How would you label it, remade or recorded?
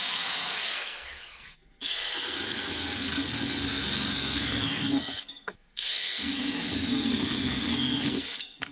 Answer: remade